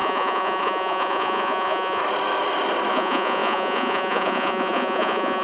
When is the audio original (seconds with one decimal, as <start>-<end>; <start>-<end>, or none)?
2.0-2.9

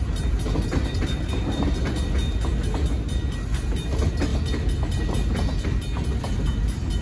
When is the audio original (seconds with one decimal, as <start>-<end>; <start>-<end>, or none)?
0.0-7.0